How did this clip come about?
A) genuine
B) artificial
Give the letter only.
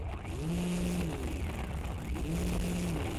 A